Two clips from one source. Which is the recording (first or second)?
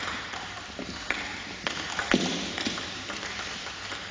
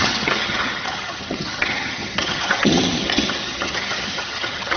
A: first